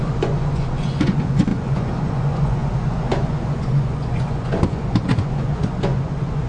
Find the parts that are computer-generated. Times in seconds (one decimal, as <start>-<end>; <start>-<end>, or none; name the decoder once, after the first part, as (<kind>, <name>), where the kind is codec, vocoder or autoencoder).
0.0-6.5 (vocoder, Vocos)